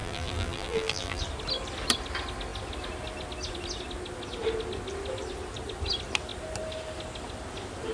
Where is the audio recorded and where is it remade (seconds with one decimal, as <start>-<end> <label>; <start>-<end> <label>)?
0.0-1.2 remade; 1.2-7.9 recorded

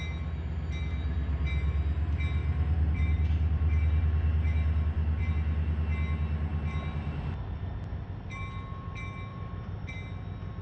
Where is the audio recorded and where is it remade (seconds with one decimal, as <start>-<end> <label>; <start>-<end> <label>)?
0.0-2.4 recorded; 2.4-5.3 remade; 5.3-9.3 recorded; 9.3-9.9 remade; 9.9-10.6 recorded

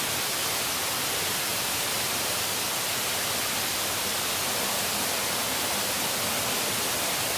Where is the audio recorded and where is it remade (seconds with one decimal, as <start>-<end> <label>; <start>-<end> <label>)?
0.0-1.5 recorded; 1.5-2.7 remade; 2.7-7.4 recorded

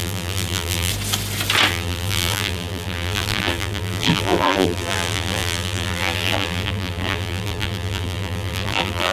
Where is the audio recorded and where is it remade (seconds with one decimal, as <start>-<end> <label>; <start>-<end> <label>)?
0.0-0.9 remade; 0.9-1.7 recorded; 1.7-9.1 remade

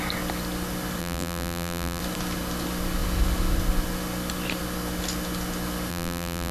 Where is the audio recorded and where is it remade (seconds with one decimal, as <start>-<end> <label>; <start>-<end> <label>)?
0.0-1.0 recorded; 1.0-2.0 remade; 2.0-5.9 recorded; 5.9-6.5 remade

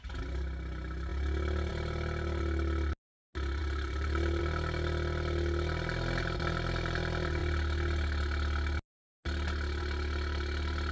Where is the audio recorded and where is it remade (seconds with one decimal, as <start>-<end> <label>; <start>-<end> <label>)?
0.0-3.6 recorded; 3.6-4.4 remade; 4.4-10.9 recorded

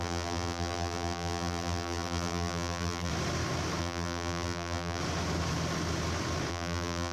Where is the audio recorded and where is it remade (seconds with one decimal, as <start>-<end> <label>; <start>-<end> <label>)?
0.0-3.1 remade; 3.1-3.8 recorded; 3.8-5.0 remade; 5.0-6.5 recorded; 6.5-7.1 remade